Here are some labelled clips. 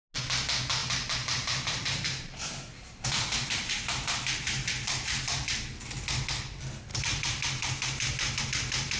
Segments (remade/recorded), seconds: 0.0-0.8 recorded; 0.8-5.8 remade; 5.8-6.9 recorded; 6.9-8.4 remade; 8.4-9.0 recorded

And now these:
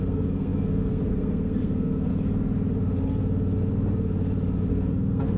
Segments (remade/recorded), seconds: 0.0-2.1 remade; 2.1-4.7 recorded; 4.7-5.4 remade

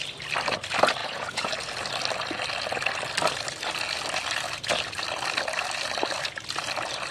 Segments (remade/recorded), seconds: 0.0-1.0 recorded; 1.0-1.5 remade; 1.5-7.1 recorded

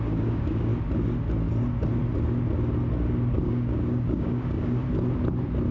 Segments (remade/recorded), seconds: 0.0-0.7 remade; 0.7-3.3 recorded; 3.3-4.8 remade; 4.8-5.7 recorded

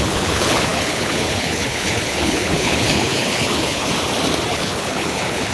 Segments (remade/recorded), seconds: 0.0-3.9 remade; 3.9-4.5 recorded; 4.5-5.5 remade

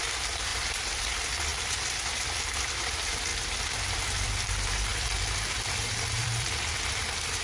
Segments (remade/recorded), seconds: 0.0-1.5 remade; 1.5-2.3 recorded; 2.3-3.3 remade; 3.3-3.9 recorded; 3.9-4.9 remade; 4.9-6.2 recorded; 6.2-7.4 remade

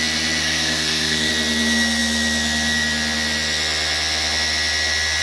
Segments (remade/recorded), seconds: 0.0-0.4 recorded; 0.4-1.3 remade; 1.3-5.2 recorded

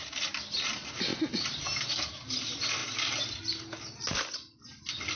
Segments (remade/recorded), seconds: 0.0-5.2 recorded